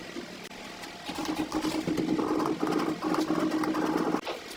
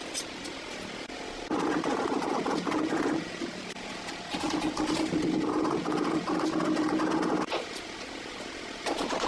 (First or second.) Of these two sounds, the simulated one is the second